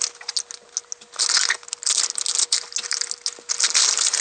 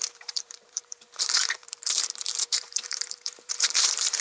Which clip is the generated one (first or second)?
second